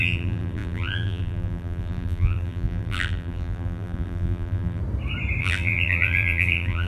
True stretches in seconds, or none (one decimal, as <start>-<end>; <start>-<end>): 4.8-5.4